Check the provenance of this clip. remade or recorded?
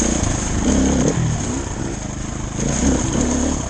recorded